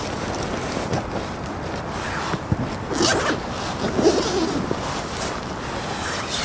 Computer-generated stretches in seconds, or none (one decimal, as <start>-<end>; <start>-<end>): none